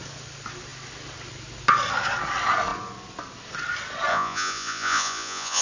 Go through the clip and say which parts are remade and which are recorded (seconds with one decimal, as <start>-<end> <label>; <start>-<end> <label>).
0.0-4.1 recorded; 4.1-5.6 remade